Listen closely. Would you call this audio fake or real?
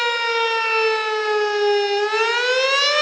real